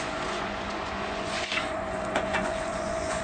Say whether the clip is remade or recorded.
remade